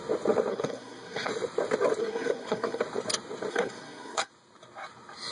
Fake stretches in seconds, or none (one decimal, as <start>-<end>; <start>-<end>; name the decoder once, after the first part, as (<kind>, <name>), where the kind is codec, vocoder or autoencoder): 0.5-1.3 (codec, SNAC); 2.0-2.8; 3.5-4.3